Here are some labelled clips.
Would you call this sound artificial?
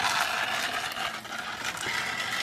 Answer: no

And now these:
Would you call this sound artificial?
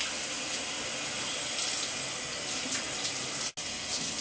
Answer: no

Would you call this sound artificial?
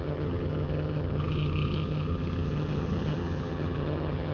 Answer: yes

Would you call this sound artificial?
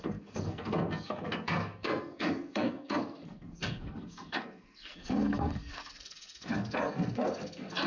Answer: yes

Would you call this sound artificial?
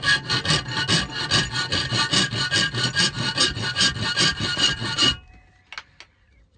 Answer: no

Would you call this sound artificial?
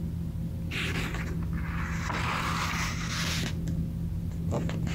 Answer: no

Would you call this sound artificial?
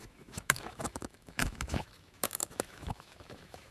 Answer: yes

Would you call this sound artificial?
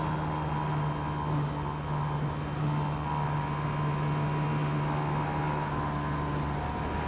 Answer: no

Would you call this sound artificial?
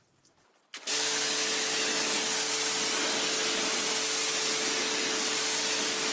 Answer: no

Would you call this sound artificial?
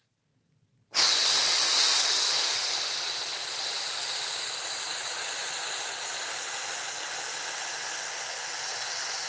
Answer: no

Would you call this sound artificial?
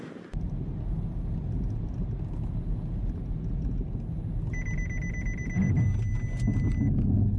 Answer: no